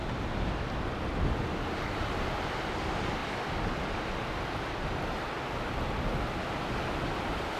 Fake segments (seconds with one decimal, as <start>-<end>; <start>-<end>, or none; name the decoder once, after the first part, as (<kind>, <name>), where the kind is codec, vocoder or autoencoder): none